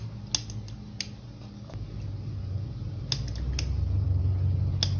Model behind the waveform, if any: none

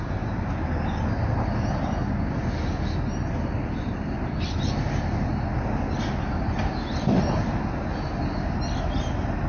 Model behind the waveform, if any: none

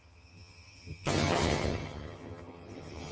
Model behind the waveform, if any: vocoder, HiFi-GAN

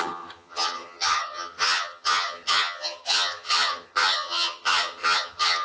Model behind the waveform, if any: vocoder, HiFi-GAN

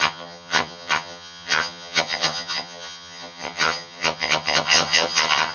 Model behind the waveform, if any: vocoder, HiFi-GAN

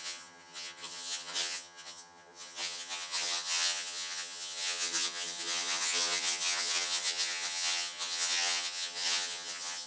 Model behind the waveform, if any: vocoder, HiFi-GAN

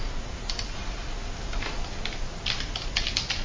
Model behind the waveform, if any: none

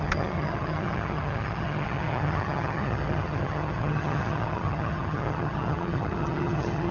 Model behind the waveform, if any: vocoder, HiFi-GAN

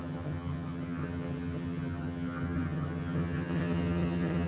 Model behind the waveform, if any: vocoder, HiFi-GAN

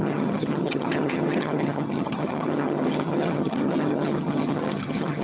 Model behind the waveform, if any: vocoder, HiFi-GAN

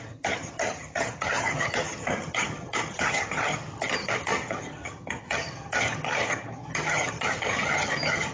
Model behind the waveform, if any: vocoder, HiFi-GAN